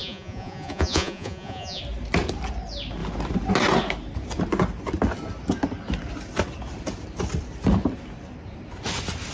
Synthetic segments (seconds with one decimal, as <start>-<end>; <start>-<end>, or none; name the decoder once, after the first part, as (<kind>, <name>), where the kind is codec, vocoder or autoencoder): 0.0-1.8 (vocoder, Vocos)